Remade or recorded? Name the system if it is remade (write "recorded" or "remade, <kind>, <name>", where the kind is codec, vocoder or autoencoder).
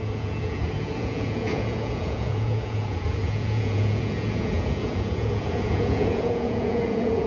remade, vocoder, Vocos